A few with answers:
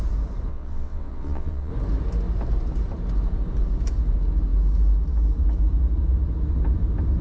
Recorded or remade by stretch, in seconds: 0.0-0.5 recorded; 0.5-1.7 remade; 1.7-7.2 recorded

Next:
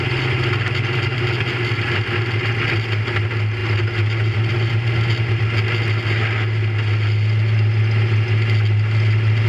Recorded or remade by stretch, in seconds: 0.0-9.5 recorded

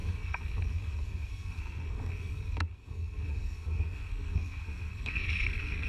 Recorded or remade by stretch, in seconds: 0.0-5.9 remade

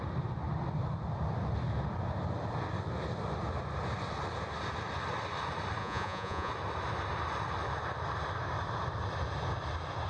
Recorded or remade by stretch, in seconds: 0.0-5.8 recorded; 5.8-6.5 remade; 6.5-10.1 recorded

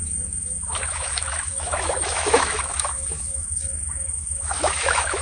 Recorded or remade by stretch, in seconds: 0.0-5.2 remade

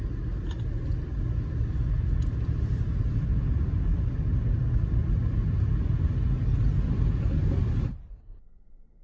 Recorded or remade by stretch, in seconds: 0.0-9.0 recorded

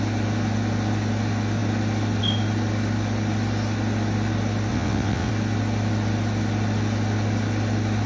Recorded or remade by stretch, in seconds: 0.0-4.7 recorded; 4.7-5.3 remade; 5.3-8.1 recorded